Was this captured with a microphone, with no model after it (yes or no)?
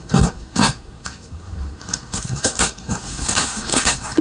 no